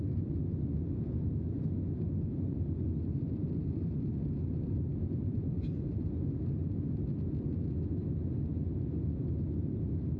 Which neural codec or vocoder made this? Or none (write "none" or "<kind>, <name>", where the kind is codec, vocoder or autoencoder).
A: none